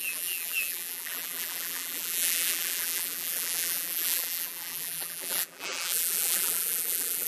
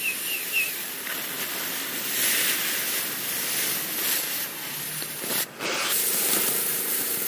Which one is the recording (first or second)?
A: second